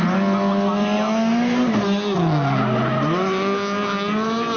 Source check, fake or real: real